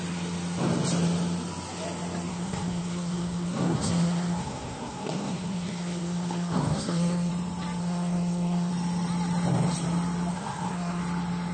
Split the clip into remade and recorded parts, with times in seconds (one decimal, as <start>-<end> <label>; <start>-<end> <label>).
0.0-2.3 recorded; 2.3-7.3 remade; 7.3-7.8 recorded; 7.8-8.7 remade; 8.7-10.3 recorded; 10.3-11.0 remade; 11.0-11.5 recorded